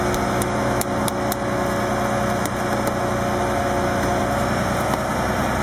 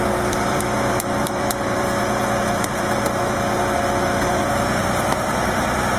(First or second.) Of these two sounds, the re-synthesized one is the second